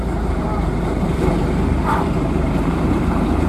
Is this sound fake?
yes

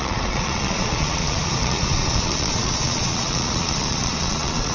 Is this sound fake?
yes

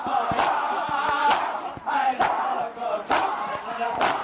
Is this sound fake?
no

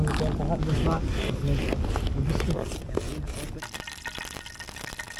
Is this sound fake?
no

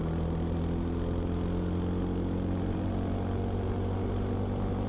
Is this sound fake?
no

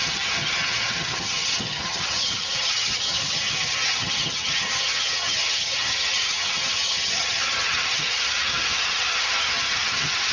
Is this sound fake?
yes